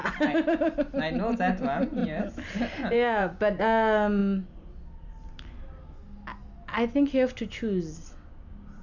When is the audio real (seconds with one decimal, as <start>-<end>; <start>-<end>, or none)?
0.0-2.0; 3.6-8.8